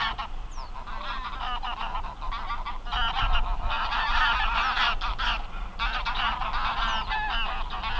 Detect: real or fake real